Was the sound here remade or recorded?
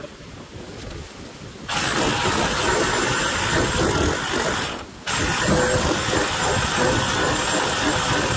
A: recorded